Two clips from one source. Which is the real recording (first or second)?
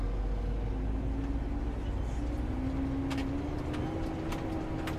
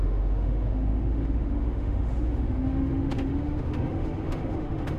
first